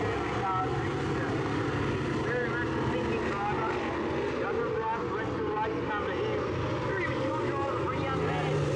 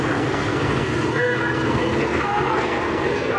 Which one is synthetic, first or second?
second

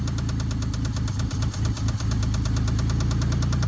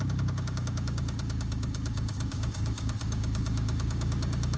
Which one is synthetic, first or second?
second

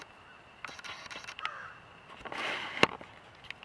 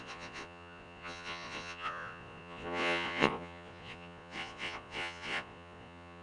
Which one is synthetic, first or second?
second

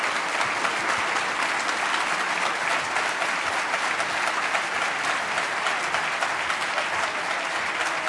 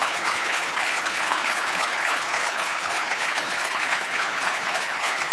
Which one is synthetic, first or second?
second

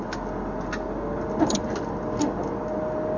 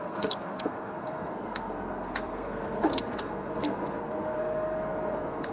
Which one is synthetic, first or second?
second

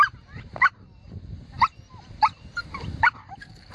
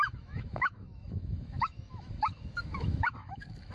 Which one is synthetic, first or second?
second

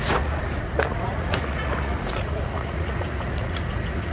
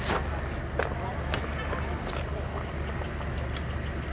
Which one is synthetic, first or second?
first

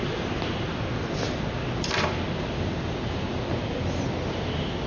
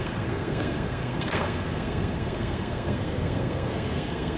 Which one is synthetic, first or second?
second